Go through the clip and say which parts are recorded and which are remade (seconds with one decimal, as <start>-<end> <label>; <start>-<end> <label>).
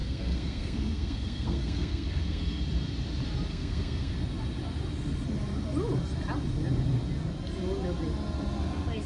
0.0-2.6 remade; 2.6-3.5 recorded; 3.5-4.1 remade; 4.1-9.1 recorded